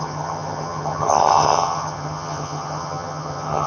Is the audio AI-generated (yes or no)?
yes